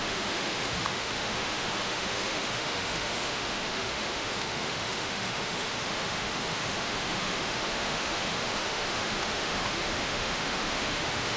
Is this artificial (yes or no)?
yes